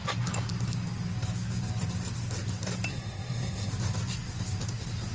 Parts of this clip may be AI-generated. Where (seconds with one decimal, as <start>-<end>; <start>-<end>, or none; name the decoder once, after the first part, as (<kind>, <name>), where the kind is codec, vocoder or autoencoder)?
2.9-3.7 (codec, SNAC)

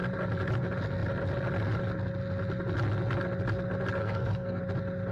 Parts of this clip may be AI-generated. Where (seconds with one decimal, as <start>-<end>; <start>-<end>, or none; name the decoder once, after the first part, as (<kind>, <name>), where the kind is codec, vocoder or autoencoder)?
4.0-4.6 (codec, SNAC)

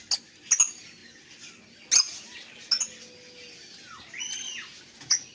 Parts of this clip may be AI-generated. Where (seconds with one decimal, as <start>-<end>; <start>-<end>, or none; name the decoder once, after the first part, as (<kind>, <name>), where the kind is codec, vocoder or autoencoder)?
none

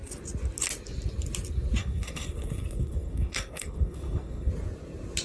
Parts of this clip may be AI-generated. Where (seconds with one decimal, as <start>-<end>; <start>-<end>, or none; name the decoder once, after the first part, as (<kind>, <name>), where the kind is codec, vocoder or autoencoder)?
1.8-4.5 (codec, SNAC)